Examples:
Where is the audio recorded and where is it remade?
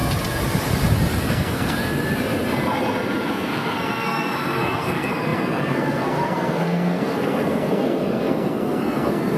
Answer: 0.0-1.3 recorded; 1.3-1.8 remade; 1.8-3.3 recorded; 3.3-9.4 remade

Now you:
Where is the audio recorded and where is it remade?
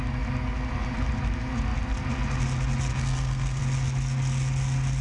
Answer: 0.0-2.9 recorded; 2.9-3.6 remade; 3.6-5.0 recorded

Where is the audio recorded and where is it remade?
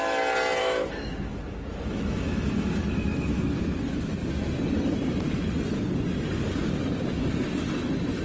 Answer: 0.0-0.6 recorded; 0.6-4.1 remade; 4.1-8.2 recorded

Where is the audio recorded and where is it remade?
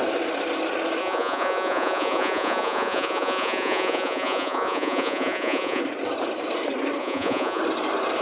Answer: 0.0-1.0 recorded; 1.0-5.8 remade; 5.8-7.0 recorded; 7.0-7.6 remade; 7.6-8.2 recorded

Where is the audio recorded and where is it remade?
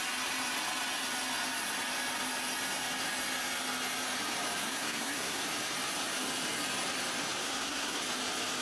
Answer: 0.0-4.6 recorded; 4.6-5.4 remade; 5.4-7.4 recorded; 7.4-8.0 remade; 8.0-8.6 recorded